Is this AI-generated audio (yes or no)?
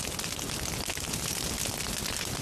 no